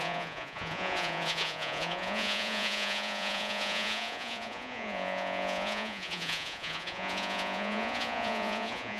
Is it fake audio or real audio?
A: fake